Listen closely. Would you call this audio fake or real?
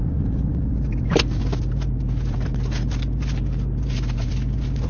real